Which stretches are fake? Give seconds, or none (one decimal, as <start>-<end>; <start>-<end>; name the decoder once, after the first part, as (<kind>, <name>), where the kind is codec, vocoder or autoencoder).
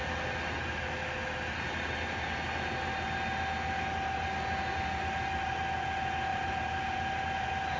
6.3-7.2 (vocoder, BigVGAN v2)